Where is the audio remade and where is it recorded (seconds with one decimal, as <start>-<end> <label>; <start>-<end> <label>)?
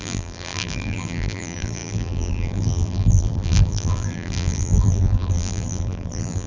0.0-6.5 remade